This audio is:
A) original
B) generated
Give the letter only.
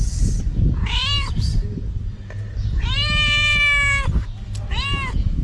A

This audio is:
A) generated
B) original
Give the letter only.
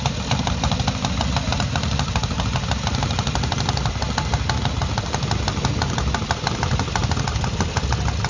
B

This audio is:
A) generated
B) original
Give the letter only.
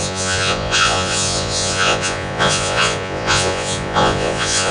A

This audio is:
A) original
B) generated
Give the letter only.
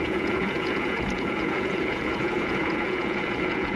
B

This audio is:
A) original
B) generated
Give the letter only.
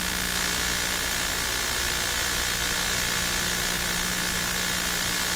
A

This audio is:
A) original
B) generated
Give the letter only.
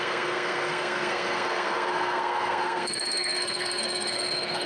B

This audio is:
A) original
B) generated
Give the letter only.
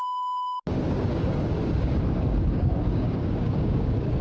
B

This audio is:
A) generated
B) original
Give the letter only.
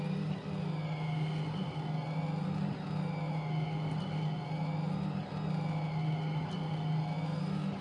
B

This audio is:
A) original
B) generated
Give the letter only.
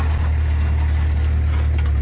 A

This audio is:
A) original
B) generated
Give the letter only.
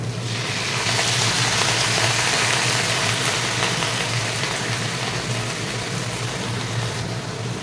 A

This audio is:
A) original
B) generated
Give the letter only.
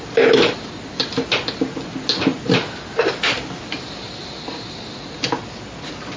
A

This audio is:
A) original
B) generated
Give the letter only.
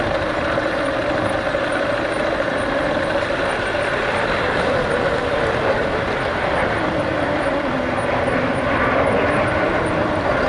A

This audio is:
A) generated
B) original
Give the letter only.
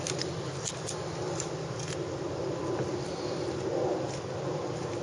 B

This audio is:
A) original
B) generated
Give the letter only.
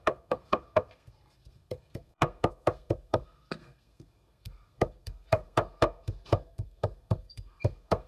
B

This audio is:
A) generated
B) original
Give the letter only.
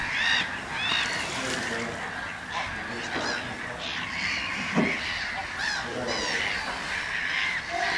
B